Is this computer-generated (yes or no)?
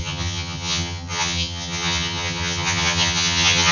yes